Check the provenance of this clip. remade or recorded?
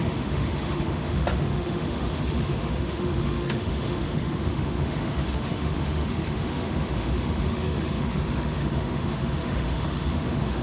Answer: remade